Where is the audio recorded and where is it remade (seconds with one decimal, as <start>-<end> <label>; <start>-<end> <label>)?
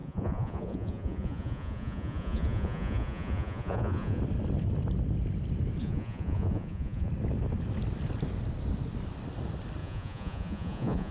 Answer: 0.0-4.2 remade; 4.2-5.8 recorded; 5.8-7.1 remade; 7.1-9.8 recorded; 9.8-11.1 remade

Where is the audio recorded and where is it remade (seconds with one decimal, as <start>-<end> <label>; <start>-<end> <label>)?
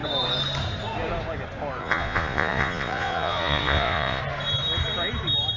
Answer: 0.0-1.8 recorded; 1.8-4.2 remade; 4.2-5.6 recorded